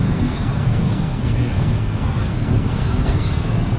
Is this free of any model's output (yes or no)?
no